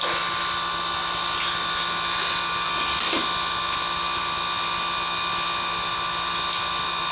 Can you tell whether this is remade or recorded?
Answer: recorded